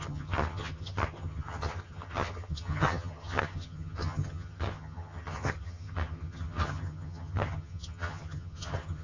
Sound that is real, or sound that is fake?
fake